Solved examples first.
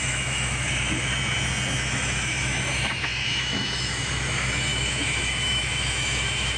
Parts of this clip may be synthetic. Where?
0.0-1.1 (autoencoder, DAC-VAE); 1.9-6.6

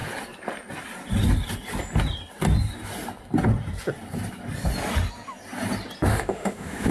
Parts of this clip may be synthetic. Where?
6.1-6.9 (autoencoder, DAC-VAE)

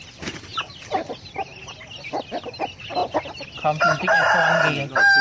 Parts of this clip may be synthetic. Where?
none

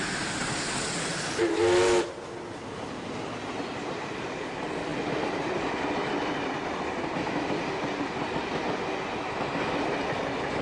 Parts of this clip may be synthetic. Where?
none

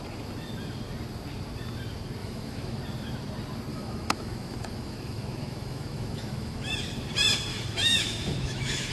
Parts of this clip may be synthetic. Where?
2.2-2.8 (autoencoder, DAC-VAE); 3.7-6.7; 7.5-8.9

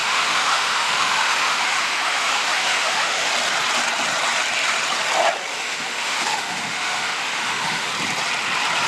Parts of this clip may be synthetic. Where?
0.0-3.3 (autoencoder, DAC-VAE); 5.5-7.9

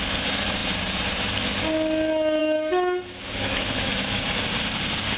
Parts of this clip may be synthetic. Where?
2.4-4.2 (autoencoder, DAC-VAE)